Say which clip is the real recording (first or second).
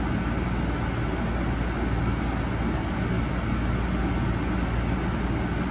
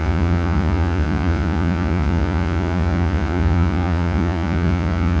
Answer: first